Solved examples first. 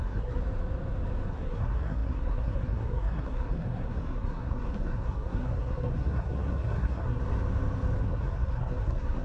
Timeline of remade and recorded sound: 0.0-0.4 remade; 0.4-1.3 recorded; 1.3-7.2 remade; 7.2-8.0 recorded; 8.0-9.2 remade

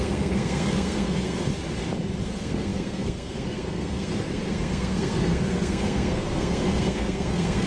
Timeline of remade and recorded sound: 0.0-1.5 remade; 1.5-2.2 recorded; 2.2-7.7 remade

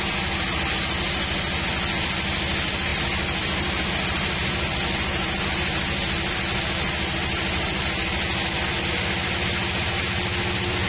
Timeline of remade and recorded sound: 0.0-10.9 recorded

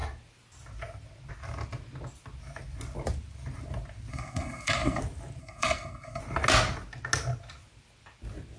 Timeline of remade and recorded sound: 0.0-4.1 recorded; 4.1-5.0 remade; 5.0-5.4 recorded; 5.4-6.2 remade; 6.2-8.6 recorded

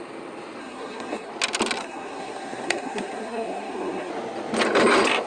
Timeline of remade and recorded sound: 0.0-0.6 recorded; 0.6-1.3 remade; 1.3-1.8 recorded; 1.8-4.1 remade; 4.1-5.3 recorded

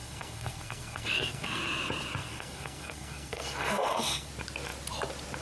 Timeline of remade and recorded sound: 0.0-1.6 remade; 1.6-2.2 recorded; 2.2-4.3 remade; 4.3-5.4 recorded